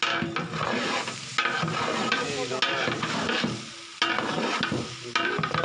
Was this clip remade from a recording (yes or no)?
no